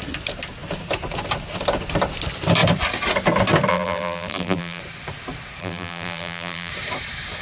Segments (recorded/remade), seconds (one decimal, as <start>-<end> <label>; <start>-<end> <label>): 0.0-3.7 recorded; 3.7-4.8 remade; 4.8-5.6 recorded; 5.6-6.7 remade; 6.7-7.4 recorded